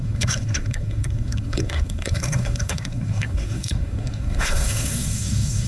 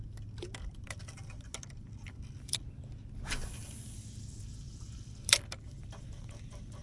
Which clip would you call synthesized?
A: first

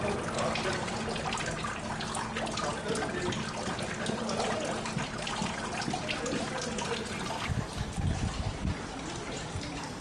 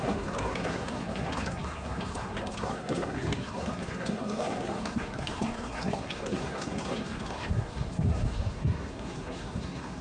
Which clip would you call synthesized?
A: second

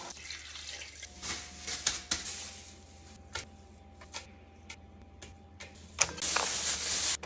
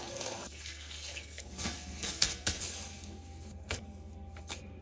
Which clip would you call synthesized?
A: second